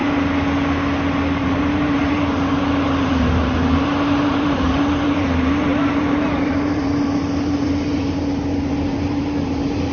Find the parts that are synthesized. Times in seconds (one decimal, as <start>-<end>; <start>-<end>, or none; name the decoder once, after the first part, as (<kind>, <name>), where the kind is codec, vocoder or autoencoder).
1.4-9.9 (vocoder, BigVGAN v2)